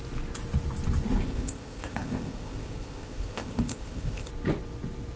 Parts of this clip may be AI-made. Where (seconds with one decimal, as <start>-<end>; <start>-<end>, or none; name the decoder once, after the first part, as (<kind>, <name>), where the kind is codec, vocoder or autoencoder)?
1.2-4.3 (codec, ZipCodec)